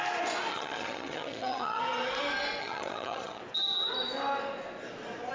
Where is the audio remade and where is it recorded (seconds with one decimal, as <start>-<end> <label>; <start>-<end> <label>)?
0.0-0.5 recorded; 0.5-1.8 remade; 1.8-2.6 recorded; 2.6-3.4 remade; 3.4-5.3 recorded